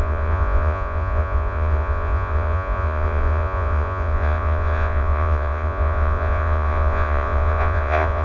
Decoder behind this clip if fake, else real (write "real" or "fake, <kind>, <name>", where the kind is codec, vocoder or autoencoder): fake, vocoder, Vocos